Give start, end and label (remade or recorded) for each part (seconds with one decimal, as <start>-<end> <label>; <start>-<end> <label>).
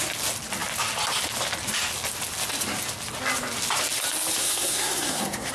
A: 0.0-4.4 recorded; 4.4-5.5 remade